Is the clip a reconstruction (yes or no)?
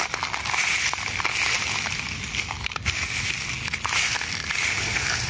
no